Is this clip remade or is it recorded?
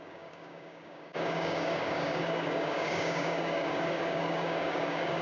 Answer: remade